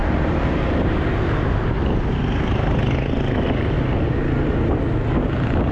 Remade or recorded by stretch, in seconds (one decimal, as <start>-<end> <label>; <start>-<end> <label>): 0.0-1.8 remade; 1.8-5.7 recorded